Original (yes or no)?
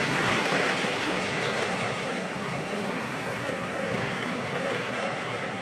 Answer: no